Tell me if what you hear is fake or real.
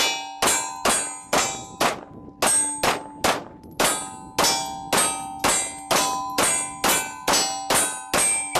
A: real